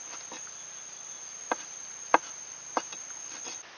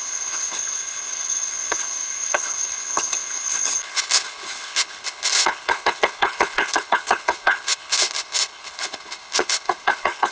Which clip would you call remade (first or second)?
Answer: second